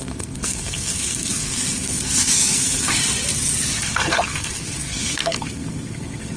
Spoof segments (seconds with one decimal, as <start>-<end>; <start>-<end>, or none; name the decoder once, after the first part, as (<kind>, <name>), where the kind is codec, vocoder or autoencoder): 0.0-3.0 (codec, SNAC); 3.8-6.4